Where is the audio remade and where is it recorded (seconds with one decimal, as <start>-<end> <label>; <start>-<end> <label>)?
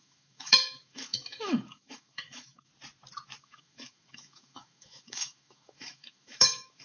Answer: 0.0-2.7 remade; 2.7-3.4 recorded; 3.4-6.8 remade